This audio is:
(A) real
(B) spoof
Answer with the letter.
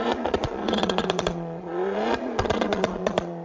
B